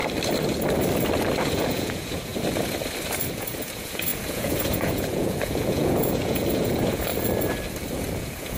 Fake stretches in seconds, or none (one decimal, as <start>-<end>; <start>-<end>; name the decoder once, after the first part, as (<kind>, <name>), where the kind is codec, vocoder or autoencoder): 1.4-2.3 (vocoder, Vocos); 3.3-7.1; 8.2-8.6